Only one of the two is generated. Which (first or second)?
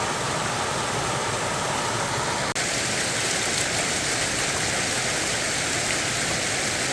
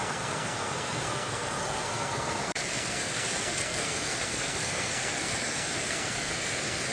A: second